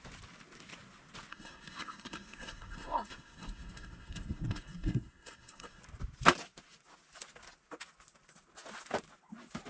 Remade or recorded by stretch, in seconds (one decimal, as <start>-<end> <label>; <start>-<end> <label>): 0.0-1.3 recorded; 1.3-5.8 remade; 5.8-9.7 recorded